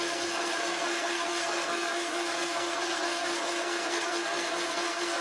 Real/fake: fake